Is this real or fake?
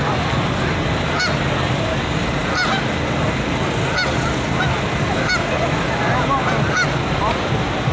real